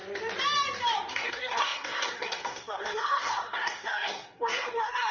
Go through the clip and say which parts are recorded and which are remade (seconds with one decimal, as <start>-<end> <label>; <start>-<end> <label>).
0.0-1.1 recorded; 1.1-5.1 remade